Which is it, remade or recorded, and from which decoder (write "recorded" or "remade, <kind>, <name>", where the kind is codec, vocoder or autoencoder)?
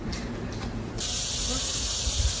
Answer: recorded